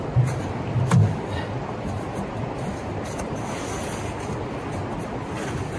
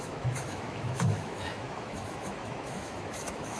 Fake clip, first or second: second